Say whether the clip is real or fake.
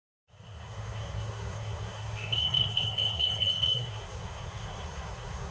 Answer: fake